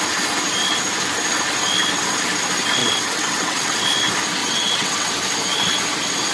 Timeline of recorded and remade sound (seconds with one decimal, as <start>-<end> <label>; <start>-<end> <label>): 0.0-2.8 recorded; 2.8-3.8 remade; 3.8-4.4 recorded; 4.4-5.1 remade; 5.1-6.3 recorded

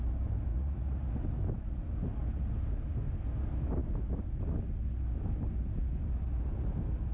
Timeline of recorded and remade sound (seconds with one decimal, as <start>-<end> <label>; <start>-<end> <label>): 0.0-0.5 recorded; 0.5-1.1 remade; 1.1-7.1 recorded

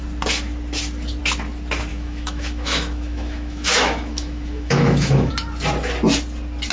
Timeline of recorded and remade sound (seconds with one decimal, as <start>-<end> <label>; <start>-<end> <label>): 0.0-1.9 recorded; 1.9-5.3 remade; 5.3-6.7 recorded